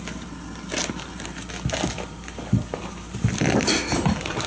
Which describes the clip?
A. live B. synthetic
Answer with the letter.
A